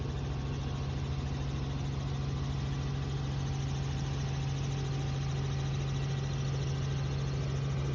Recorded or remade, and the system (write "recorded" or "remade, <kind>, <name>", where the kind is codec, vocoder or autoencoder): recorded